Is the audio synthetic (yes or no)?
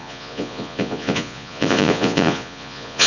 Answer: yes